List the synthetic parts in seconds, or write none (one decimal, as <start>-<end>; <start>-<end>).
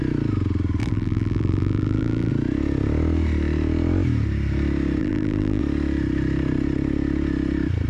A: 0.8-2.3; 5.0-5.6